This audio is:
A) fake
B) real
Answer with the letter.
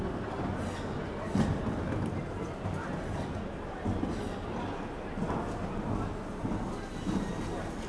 B